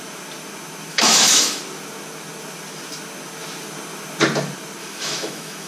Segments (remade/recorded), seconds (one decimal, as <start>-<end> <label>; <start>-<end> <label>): 0.0-0.9 recorded; 0.9-1.6 remade; 1.6-4.8 recorded; 4.8-5.7 remade